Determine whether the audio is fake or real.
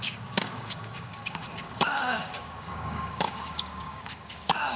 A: fake